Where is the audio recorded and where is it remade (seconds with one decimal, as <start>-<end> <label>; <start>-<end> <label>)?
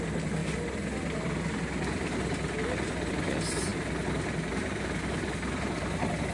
0.0-6.3 recorded